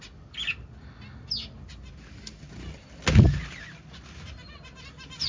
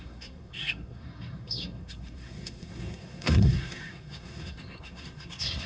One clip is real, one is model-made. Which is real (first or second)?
first